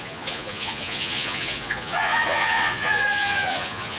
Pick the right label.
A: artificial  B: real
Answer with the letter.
A